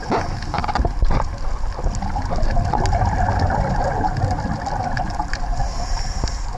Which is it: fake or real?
real